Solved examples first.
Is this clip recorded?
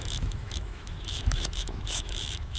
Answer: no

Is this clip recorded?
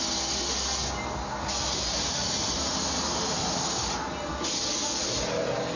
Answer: yes